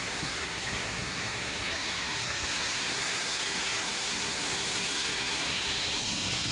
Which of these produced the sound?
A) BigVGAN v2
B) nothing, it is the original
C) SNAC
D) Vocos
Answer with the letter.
C